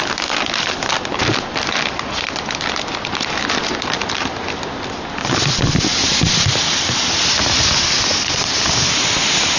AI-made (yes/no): no